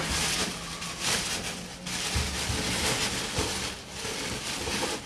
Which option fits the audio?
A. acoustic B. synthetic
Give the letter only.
A